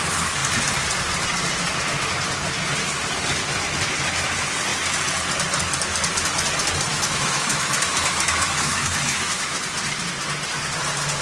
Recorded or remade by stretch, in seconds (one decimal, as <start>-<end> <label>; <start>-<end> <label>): 0.0-6.9 recorded; 6.9-9.6 remade; 9.6-11.2 recorded